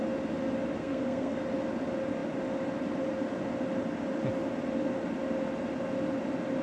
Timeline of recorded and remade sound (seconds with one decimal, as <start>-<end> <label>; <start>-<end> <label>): 0.0-0.8 recorded; 0.8-1.4 remade; 1.4-6.6 recorded